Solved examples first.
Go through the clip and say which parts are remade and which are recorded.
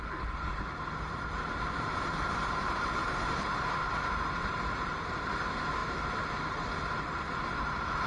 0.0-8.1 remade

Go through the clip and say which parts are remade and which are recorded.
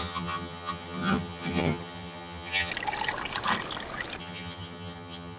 0.0-2.7 remade; 2.7-4.2 recorded; 4.2-5.4 remade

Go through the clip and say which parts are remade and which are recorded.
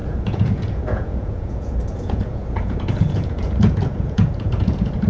0.0-5.1 remade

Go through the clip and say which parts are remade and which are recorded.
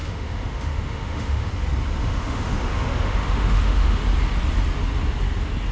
0.0-1.5 remade; 1.5-2.0 recorded; 2.0-4.0 remade; 4.0-5.7 recorded